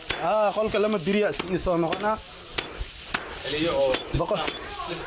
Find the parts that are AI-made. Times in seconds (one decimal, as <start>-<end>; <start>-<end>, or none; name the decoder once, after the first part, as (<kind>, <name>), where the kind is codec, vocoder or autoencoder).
none